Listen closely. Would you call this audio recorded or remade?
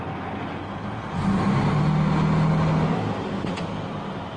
recorded